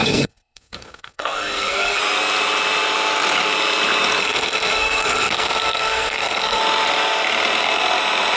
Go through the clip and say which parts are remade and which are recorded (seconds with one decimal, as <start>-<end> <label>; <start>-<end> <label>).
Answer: 0.0-2.0 remade; 2.0-4.2 recorded; 4.2-6.6 remade; 6.6-8.4 recorded